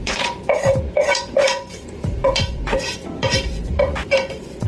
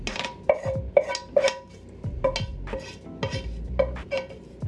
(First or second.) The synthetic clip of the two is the first